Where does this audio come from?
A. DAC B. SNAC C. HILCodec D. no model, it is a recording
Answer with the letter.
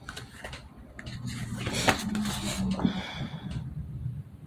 D